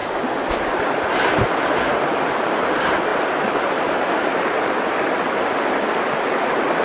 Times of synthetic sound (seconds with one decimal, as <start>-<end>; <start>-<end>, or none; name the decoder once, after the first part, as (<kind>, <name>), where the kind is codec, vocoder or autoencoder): none